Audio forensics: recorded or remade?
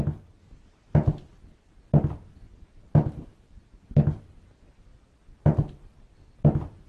recorded